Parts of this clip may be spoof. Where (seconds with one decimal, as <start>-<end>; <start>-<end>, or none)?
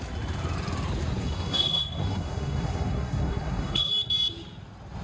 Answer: 1.2-3.9